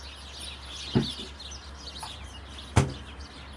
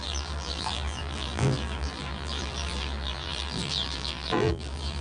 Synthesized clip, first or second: second